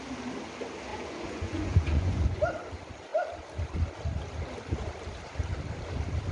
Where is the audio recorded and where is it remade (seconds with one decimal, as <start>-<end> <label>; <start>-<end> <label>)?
0.0-0.9 recorded; 0.9-2.4 remade; 2.4-6.3 recorded